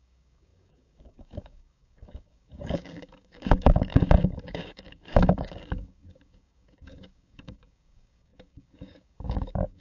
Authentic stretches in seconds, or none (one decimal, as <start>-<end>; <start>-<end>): none